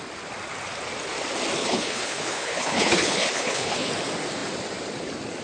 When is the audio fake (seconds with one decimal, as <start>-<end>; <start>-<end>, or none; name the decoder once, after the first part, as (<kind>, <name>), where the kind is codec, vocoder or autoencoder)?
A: 1.6-3.9 (codec, HILCodec)

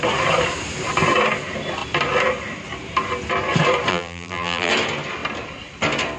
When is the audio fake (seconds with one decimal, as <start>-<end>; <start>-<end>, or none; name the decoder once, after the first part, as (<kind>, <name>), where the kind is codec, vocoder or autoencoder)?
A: 3.9-4.7 (vocoder, BigVGAN v2)

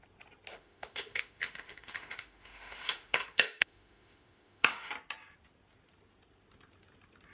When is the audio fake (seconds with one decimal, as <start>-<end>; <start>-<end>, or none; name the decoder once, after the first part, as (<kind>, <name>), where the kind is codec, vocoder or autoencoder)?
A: 0.5-4.9 (autoencoder, DAC-VAE)

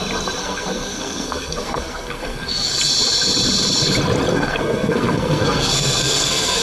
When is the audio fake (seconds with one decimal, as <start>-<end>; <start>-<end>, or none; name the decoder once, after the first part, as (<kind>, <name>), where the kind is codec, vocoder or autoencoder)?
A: 0.4-2.7 (codec, SNAC); 4.3-6.6